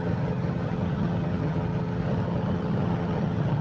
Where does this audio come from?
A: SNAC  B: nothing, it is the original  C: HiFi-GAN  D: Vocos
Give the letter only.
C